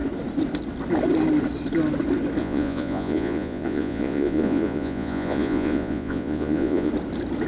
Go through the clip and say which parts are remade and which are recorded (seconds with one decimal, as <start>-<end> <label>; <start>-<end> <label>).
0.0-2.4 recorded; 2.4-6.9 remade; 6.9-7.5 recorded